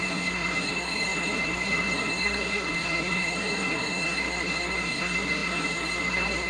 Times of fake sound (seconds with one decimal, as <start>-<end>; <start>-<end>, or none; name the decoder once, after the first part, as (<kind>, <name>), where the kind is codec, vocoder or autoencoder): 0.0-6.5 (codec, SNAC)